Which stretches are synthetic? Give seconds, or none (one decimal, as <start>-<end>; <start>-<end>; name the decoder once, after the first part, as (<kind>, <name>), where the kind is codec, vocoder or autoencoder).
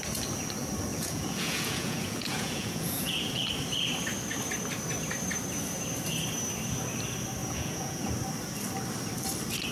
0.9-3.3 (vocoder, Vocos); 7.4-8.1